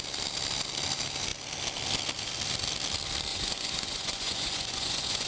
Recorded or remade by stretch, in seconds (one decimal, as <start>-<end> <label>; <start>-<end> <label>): 0.0-3.3 recorded; 3.3-5.3 remade